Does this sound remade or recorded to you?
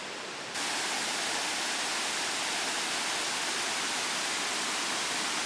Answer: recorded